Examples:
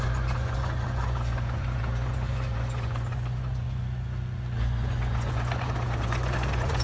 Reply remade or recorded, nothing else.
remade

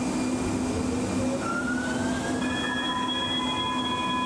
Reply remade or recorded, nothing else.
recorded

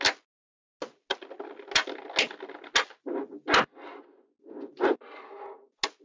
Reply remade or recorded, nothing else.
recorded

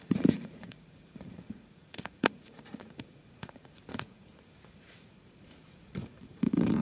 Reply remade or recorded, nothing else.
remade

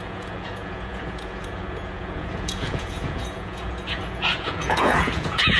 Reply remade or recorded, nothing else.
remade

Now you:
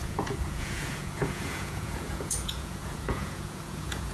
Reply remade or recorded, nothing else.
remade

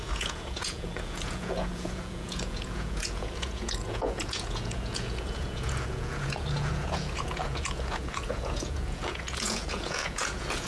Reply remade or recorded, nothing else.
remade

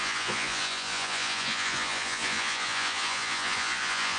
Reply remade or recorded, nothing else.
remade